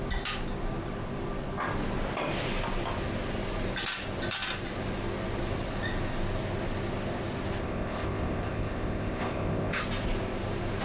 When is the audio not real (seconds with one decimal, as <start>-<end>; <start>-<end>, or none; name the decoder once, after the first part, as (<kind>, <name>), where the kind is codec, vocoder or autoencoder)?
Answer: 7.6-9.8 (codec, ZipCodec)